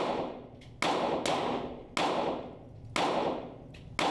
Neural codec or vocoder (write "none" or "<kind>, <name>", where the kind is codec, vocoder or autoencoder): none